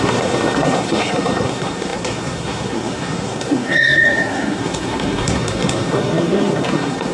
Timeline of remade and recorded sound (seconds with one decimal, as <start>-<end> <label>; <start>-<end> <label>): 0.0-7.1 remade